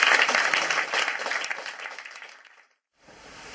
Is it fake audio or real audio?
real